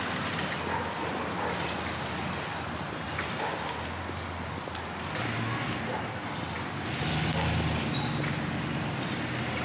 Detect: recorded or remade recorded